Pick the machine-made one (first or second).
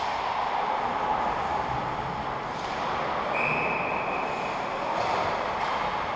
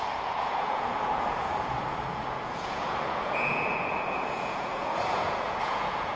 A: second